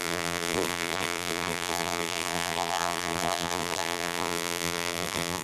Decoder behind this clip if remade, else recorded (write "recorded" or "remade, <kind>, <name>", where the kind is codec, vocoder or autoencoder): remade, vocoder, BigVGAN v2